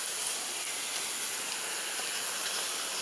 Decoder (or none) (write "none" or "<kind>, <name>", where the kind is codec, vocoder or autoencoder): none